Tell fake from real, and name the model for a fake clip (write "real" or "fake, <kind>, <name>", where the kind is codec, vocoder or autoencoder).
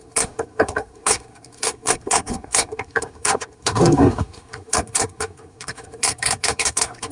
fake, codec, SNAC